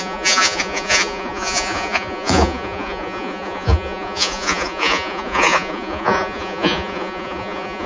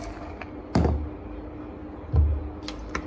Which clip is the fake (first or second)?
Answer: first